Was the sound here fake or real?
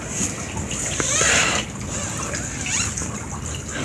real